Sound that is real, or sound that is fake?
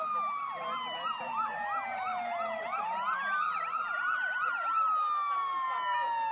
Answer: real